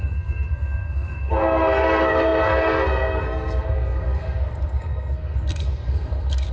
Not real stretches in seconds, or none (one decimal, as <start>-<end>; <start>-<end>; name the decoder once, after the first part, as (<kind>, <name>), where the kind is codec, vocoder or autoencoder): 0.0-6.5 (codec, SNAC)